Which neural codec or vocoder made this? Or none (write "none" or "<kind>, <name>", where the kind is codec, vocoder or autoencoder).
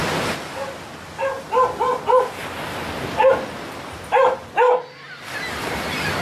none